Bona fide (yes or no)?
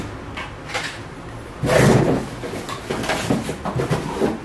yes